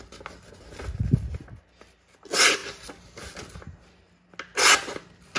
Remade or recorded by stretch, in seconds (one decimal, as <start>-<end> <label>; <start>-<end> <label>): 0.0-5.4 recorded